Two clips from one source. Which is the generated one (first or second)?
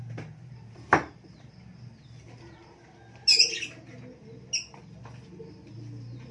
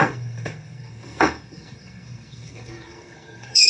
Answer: second